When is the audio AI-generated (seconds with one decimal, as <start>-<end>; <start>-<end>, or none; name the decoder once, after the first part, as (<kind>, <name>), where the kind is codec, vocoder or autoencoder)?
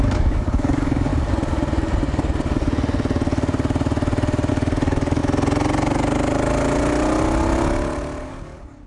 0.0-1.1 (codec, DAC); 4.5-5.2; 8.2-8.9